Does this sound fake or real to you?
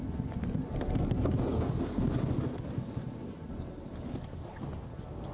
real